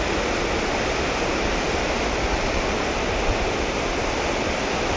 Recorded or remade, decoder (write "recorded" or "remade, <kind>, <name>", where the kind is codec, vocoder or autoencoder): recorded